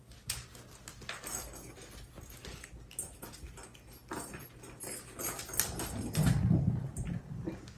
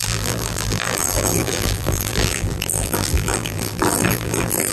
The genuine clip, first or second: first